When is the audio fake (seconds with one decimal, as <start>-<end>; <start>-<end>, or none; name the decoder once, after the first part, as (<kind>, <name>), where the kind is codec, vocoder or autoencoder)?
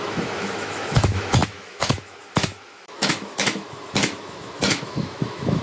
0.0-5.6 (autoencoder, DAC-VAE)